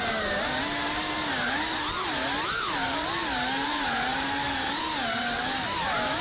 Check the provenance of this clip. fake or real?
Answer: real